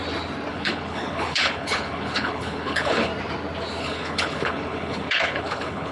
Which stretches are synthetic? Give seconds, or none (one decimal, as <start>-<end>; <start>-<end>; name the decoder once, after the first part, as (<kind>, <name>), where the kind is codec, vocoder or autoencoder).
0.5-3.1 (codec, HILCodec); 3.8-5.9